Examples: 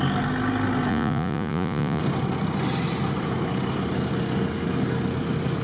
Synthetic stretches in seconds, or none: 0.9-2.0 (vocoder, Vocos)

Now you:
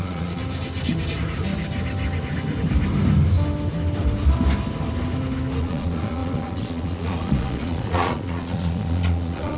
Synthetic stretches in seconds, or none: 0.0-0.4 (vocoder, Vocos); 5.6-9.6